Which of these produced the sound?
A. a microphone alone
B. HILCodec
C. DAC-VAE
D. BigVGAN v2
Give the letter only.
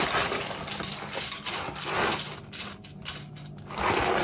A